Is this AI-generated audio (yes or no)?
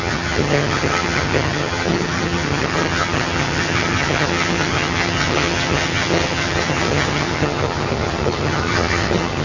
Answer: yes